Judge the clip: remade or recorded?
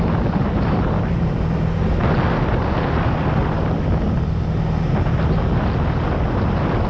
recorded